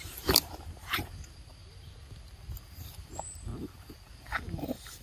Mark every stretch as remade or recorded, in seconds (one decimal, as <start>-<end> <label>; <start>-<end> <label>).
0.0-1.6 remade; 1.6-3.0 recorded; 3.0-3.5 remade; 3.5-4.1 recorded; 4.1-5.0 remade